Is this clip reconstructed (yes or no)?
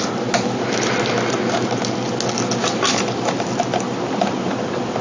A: no